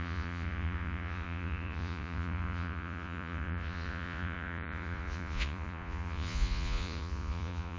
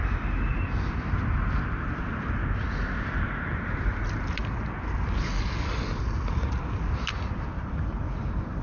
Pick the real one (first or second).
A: second